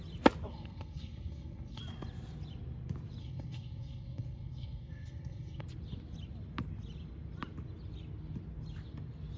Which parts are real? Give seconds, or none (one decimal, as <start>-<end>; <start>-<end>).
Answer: 0.0-0.5; 1.8-3.2; 5.6-9.4